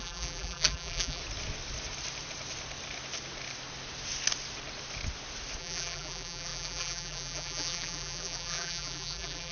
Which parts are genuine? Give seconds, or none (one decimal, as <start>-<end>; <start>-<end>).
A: 1.2-5.6

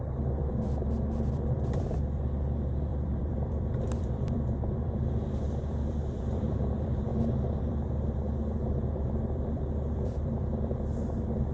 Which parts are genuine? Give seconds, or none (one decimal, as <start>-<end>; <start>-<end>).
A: 7.1-7.6